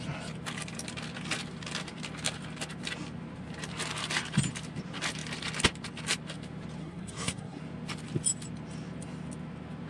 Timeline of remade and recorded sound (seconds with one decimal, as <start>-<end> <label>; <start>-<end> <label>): 0.0-6.8 recorded; 6.8-7.6 remade; 7.6-9.9 recorded